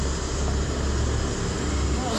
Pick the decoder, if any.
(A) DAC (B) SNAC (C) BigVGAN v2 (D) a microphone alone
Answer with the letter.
D